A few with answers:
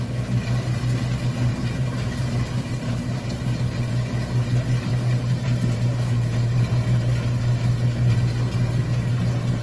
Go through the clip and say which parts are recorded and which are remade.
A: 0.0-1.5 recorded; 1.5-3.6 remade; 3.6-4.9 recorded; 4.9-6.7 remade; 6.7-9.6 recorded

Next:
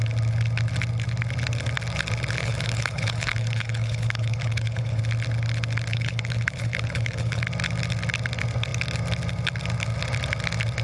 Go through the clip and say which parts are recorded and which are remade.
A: 0.0-2.4 recorded; 2.4-5.0 remade; 5.0-5.9 recorded; 5.9-7.4 remade; 7.4-10.8 recorded

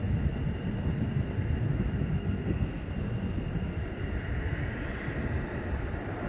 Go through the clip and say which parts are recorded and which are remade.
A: 0.0-2.2 recorded; 2.2-2.9 remade; 2.9-6.3 recorded

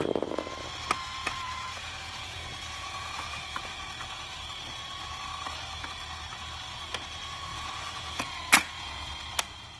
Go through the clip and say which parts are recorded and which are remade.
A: 0.0-1.2 recorded; 1.2-3.7 remade; 3.7-7.5 recorded; 7.5-9.1 remade; 9.1-9.8 recorded